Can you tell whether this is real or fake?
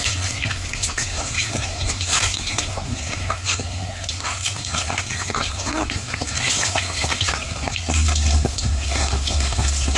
fake